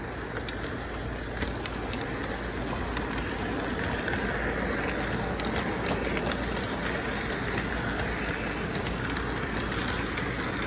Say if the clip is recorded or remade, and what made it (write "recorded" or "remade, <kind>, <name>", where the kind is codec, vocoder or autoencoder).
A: recorded